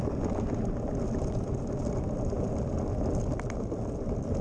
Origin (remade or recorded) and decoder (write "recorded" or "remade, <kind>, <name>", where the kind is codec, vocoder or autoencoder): recorded